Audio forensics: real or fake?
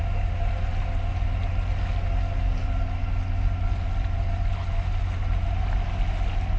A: real